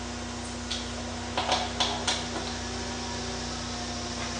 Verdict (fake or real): real